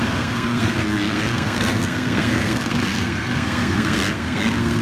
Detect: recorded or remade remade